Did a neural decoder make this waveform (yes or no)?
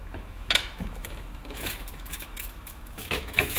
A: yes